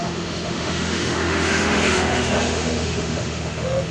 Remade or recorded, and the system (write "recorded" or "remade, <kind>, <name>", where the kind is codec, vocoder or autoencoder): remade, autoencoder, DAC-VAE